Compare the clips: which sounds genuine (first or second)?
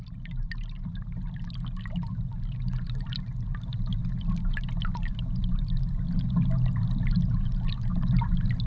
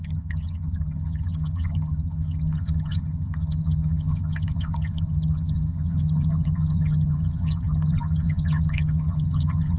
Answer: first